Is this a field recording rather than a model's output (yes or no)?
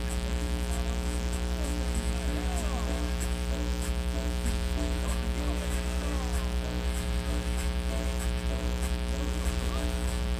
yes